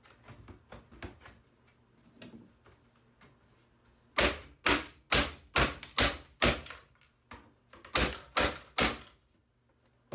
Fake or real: real